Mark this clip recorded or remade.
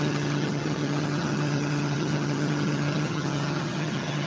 remade